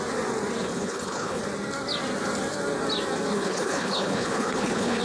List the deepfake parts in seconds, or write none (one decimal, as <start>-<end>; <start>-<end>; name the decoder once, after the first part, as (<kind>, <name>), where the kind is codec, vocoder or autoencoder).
0.7-1.4 (codec, HILCodec); 3.3-5.0